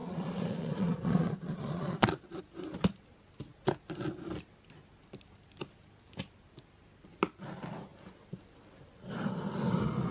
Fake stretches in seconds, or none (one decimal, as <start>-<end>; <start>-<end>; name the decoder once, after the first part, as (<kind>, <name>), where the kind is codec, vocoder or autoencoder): 0.0-2.4 (vocoder, Vocos)

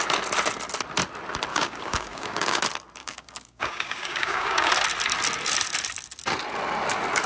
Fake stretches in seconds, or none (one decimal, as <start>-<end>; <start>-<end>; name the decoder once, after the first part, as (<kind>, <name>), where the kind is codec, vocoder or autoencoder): 1.5-2.6 (codec, DAC); 3.0-4.7

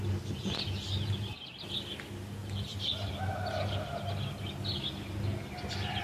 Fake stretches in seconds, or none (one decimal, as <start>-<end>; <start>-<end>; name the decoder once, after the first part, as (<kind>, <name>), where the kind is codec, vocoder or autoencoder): 2.4-4.4 (vocoder, BigVGAN v2)

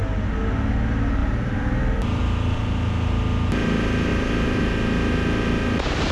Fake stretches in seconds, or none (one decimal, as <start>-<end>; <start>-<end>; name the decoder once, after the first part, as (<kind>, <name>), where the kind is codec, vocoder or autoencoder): 1.2-2.2 (vocoder, BigVGAN v2); 4.1-4.6

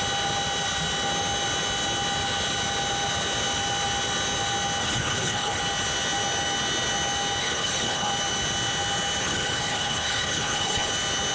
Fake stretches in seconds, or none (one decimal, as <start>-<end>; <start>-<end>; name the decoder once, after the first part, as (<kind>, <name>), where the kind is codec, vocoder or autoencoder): 4.8-5.6 (codec, HILCodec); 7.4-8.1; 9.2-10.9